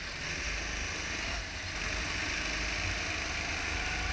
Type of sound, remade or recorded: recorded